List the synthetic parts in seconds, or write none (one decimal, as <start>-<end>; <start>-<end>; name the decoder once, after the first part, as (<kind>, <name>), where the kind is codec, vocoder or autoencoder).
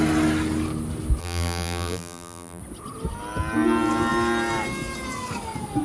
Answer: 1.2-2.6 (vocoder, BigVGAN v2)